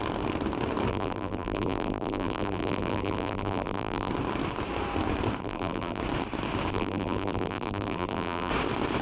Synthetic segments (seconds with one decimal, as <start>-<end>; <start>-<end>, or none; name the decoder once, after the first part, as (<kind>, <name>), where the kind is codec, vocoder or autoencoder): 0.9-4.1 (vocoder, BigVGAN v2); 5.4-6.0; 6.7-8.5